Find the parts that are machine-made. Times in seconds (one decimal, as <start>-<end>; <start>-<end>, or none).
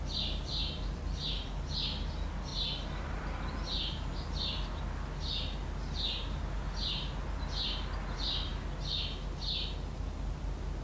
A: none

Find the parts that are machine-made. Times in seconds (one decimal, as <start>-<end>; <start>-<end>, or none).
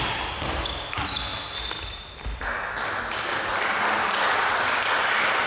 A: none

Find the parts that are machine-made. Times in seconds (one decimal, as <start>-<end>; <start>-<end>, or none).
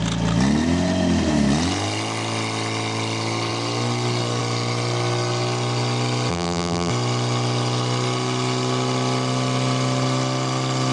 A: 6.3-6.9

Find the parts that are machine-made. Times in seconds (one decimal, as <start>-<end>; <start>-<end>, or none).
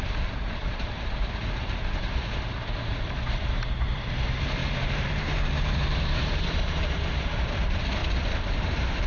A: 0.0-8.0; 8.5-9.1